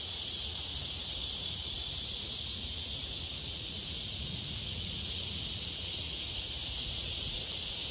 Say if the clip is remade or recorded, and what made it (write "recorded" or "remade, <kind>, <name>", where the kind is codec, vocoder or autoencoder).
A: remade, vocoder, Vocos